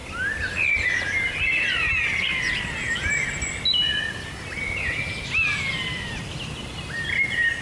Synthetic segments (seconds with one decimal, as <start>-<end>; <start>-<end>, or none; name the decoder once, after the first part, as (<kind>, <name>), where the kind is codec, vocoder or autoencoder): none